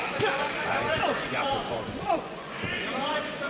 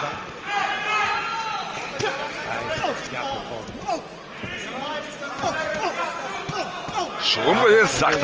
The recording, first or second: second